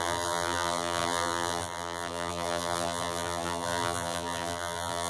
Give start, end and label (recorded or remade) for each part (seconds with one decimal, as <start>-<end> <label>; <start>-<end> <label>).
0.0-5.1 remade

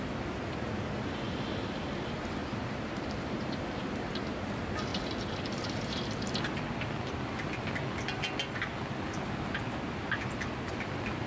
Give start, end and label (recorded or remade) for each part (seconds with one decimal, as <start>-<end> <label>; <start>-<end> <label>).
0.0-2.4 recorded; 2.4-4.5 remade; 4.5-4.9 recorded; 4.9-6.3 remade; 6.3-11.3 recorded

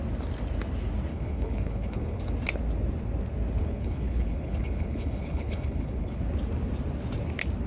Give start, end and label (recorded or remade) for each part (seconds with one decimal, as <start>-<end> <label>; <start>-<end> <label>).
0.0-1.1 recorded; 1.1-2.2 remade; 2.2-3.6 recorded; 3.6-6.2 remade; 6.2-7.7 recorded

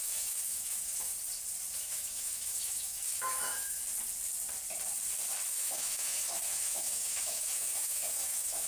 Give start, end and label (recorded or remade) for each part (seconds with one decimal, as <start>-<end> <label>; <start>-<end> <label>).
0.0-1.1 remade; 1.1-1.7 recorded; 1.7-3.8 remade; 3.8-5.5 recorded; 5.5-8.7 remade

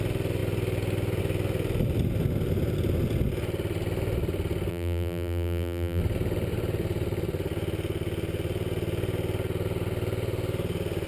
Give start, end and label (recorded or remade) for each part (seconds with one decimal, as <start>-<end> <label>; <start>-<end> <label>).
0.0-4.7 recorded; 4.7-6.0 remade; 6.0-11.1 recorded

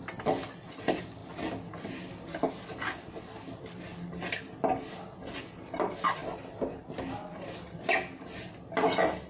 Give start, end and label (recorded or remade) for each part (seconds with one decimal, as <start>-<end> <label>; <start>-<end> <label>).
0.0-9.3 recorded

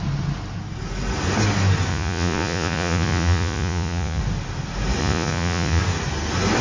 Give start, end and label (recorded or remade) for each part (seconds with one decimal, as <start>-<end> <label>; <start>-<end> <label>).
0.0-1.9 recorded; 1.9-4.2 remade; 4.2-5.0 recorded; 5.0-5.8 remade; 5.8-6.6 recorded